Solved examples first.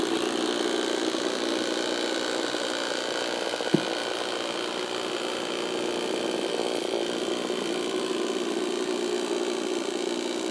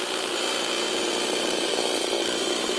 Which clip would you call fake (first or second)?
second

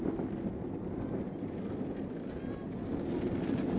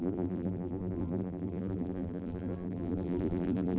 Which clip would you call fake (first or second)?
second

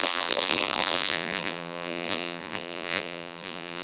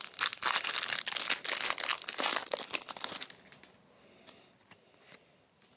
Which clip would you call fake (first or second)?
first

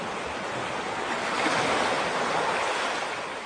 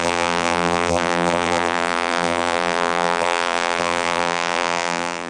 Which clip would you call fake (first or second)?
second